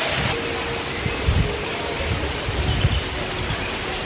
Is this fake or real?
real